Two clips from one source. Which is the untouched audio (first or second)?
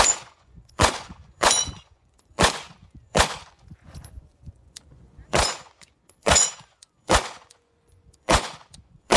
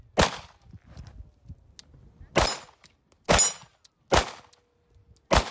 second